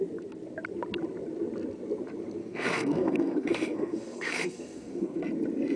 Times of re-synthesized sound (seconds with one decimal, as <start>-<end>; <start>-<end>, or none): 2.4-5.2